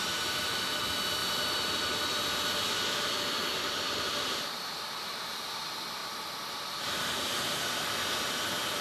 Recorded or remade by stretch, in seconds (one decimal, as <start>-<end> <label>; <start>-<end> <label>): 0.0-1.2 recorded; 1.2-1.9 remade; 1.9-3.4 recorded; 3.4-5.6 remade; 5.6-6.0 recorded; 6.0-7.6 remade; 7.6-8.8 recorded